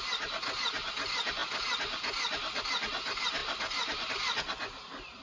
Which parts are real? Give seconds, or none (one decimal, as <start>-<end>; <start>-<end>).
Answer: 0.0-5.2